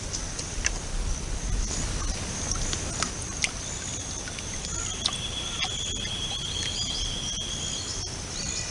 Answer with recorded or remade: recorded